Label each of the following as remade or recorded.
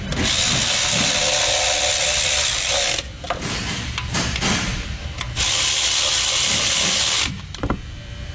recorded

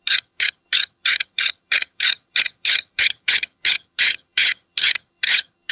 remade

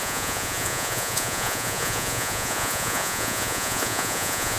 remade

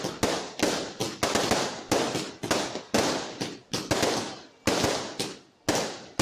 recorded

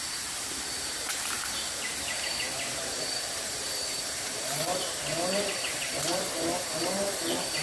remade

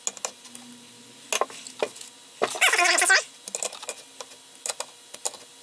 recorded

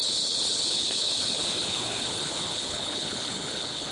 remade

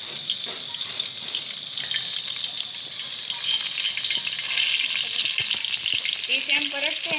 recorded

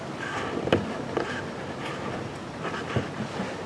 recorded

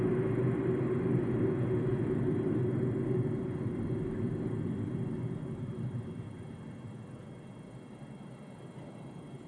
recorded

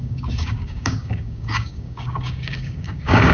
remade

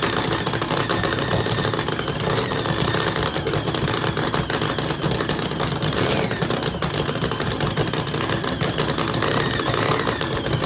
recorded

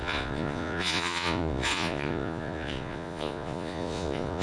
remade